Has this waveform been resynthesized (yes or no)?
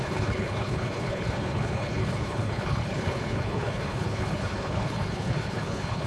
yes